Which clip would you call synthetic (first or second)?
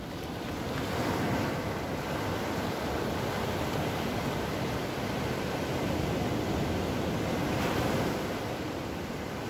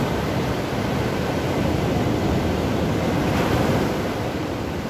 second